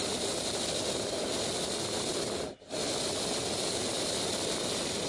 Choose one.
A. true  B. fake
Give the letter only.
A